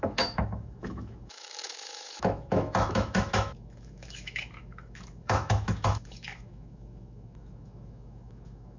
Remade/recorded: remade